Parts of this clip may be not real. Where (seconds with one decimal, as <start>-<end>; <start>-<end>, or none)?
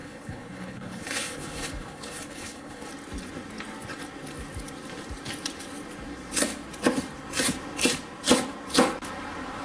0.0-2.9